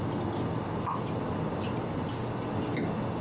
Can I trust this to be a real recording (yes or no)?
yes